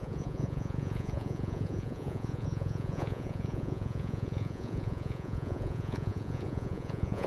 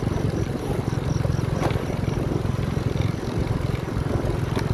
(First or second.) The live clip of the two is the second